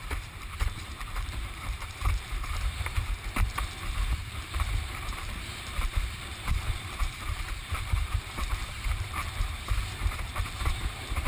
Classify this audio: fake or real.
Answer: fake